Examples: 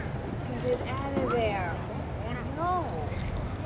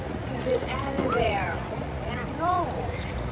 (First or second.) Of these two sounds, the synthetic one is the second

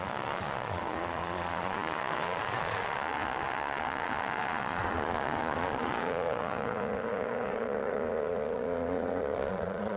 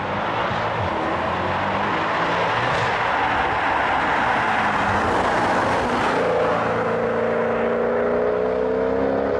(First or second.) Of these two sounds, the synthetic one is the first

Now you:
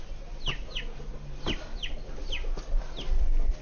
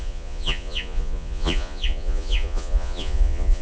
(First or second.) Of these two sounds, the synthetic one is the second